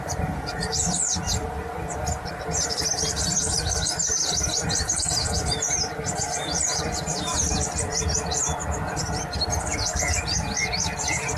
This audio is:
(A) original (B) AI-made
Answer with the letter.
A